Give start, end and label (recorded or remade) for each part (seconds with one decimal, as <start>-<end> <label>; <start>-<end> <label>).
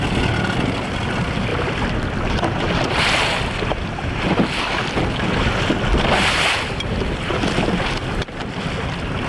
0.0-1.5 recorded; 1.5-4.6 remade; 4.6-9.3 recorded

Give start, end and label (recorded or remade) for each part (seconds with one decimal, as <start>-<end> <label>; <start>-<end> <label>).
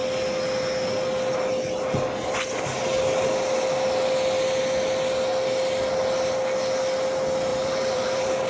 0.0-7.5 recorded; 7.5-8.5 remade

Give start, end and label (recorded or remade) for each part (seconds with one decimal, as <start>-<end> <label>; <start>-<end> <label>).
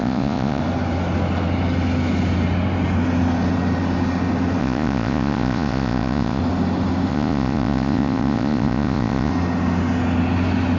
0.0-0.6 remade; 0.6-4.6 recorded; 4.6-6.4 remade; 6.4-7.1 recorded; 7.1-9.3 remade; 9.3-10.8 recorded